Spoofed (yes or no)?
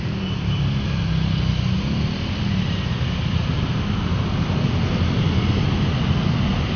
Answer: no